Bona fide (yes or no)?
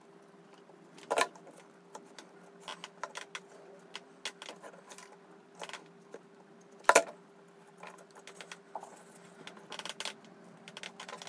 yes